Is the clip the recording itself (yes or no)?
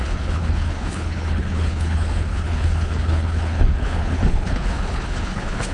no